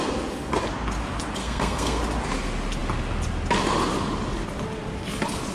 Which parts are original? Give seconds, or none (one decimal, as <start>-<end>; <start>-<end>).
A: 0.0-1.4; 2.0-5.5